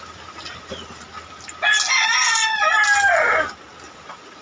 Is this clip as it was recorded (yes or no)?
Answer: yes